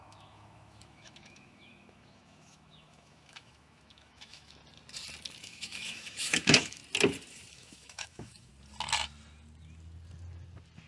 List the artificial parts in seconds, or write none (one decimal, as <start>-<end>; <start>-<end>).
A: 0.0-4.6; 5.4-6.8; 7.5-8.5